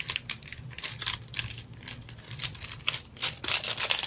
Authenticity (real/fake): real